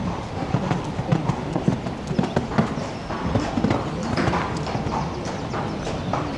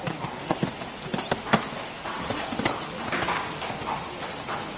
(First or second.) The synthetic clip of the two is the first